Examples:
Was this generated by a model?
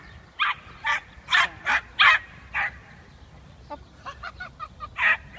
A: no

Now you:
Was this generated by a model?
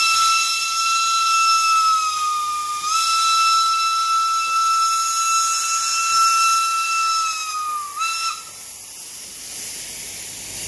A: no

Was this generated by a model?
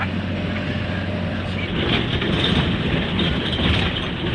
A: no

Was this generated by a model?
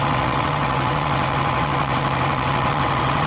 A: yes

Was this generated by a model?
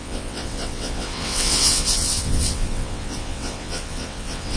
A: yes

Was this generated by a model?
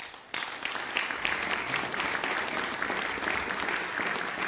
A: no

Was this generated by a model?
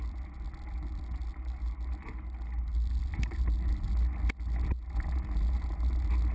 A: no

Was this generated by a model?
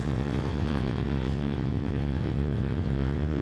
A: yes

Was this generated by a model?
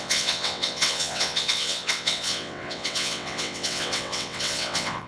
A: yes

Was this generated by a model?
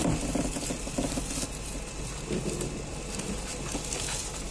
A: no